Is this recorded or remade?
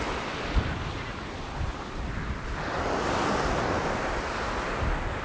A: recorded